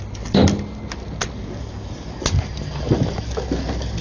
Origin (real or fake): real